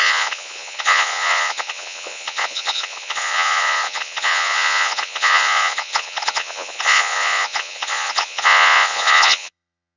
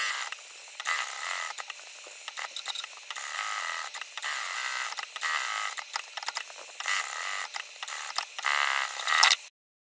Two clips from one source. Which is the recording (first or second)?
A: second